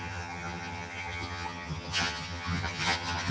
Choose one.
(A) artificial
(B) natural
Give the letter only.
A